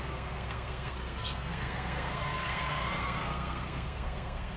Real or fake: fake